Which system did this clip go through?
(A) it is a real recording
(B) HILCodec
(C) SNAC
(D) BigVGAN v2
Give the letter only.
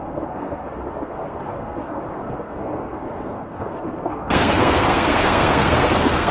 C